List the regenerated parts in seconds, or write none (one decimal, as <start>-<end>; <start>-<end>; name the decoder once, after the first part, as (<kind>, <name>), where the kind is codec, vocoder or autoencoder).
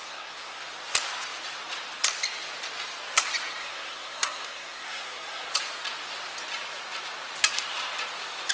0.0-0.6 (codec, SNAC); 3.6-5.5